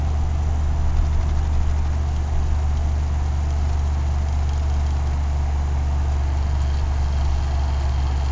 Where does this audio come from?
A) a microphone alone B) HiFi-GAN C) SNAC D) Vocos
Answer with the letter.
A